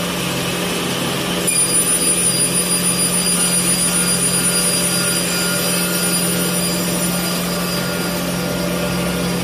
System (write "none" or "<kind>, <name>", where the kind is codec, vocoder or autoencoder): none